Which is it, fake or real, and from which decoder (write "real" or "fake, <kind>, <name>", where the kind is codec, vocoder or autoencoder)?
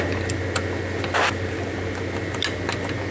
real